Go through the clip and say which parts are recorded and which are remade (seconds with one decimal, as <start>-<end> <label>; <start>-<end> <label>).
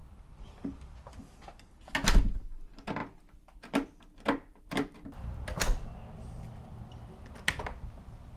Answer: 0.0-8.4 recorded